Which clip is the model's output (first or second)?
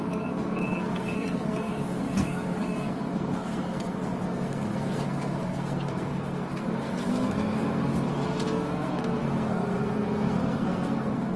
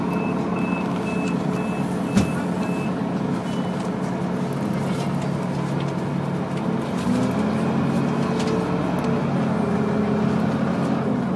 first